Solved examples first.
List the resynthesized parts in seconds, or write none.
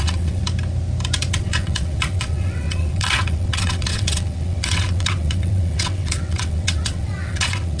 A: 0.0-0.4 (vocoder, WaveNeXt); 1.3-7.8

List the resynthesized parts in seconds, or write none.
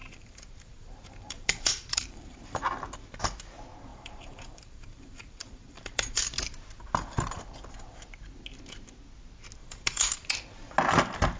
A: 0.0-2.6 (vocoder, BigVGAN v2); 3.9-6.2; 9.6-10.1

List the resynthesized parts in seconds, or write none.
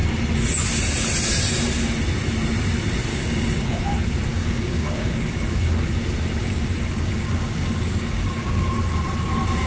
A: 3.1-3.8 (codec, DAC); 4.3-5.9; 6.4-8.7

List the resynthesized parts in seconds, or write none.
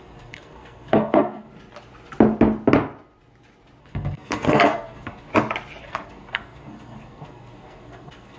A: 0.0-1.5 (codec, SNAC); 3.8-5.3; 5.8-8.4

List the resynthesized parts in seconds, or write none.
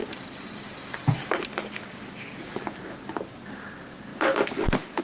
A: none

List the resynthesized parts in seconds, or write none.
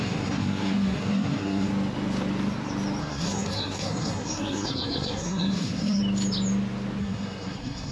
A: 0.0-1.7 (codec, SNAC); 3.0-6.0; 7.0-7.9